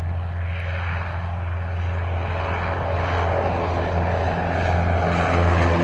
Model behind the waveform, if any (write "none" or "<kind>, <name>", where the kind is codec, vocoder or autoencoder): none